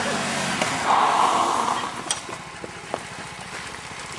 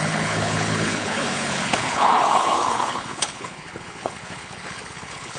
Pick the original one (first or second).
first